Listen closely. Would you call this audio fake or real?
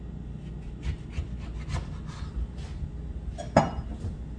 real